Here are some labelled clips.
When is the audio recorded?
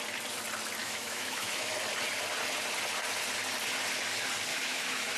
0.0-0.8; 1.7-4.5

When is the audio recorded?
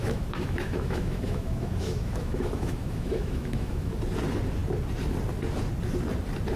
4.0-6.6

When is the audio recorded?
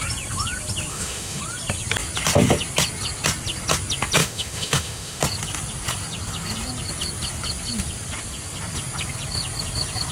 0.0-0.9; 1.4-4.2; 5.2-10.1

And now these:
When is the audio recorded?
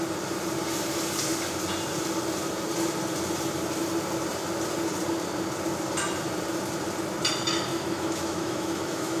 0.0-7.7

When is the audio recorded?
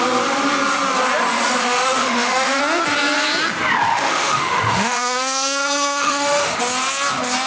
0.0-1.6; 2.6-3.9; 6.6-7.5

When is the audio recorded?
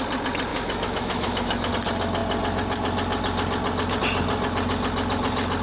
0.0-0.5; 1.7-5.6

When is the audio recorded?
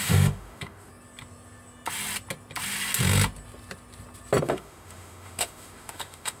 0.9-4.4